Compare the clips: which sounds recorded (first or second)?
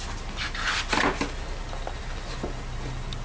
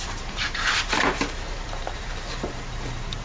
first